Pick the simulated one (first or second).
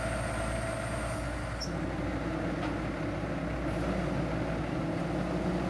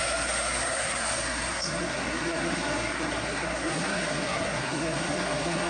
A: second